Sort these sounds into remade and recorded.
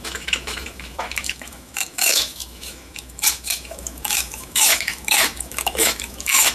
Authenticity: remade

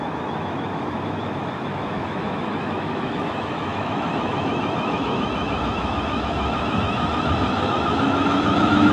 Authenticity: remade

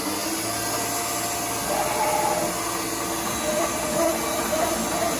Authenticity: recorded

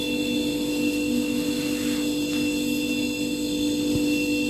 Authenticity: recorded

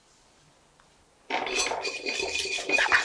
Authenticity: recorded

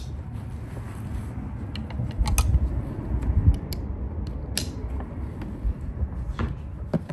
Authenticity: recorded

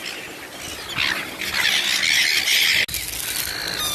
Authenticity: recorded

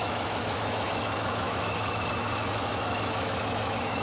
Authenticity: remade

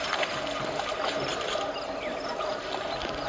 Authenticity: recorded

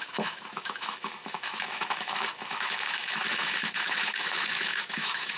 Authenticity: remade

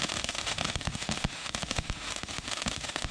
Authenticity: remade